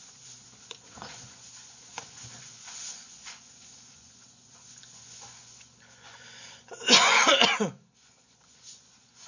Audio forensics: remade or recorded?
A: remade